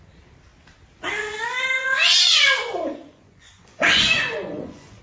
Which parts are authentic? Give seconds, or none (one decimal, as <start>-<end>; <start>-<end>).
0.0-1.8